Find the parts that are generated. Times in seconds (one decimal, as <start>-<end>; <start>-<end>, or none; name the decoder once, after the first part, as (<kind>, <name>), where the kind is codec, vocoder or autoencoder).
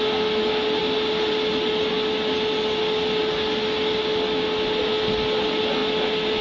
none